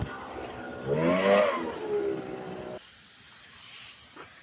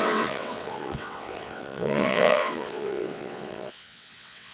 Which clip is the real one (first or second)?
first